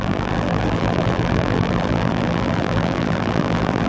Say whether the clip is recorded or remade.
remade